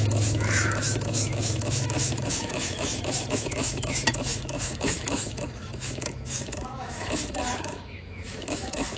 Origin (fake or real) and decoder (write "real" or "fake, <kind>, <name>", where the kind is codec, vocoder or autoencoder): fake, autoencoder, DAC-VAE